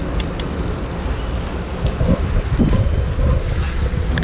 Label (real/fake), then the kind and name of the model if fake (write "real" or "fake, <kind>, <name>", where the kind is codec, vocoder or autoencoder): real